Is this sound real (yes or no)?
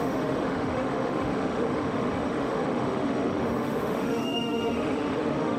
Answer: no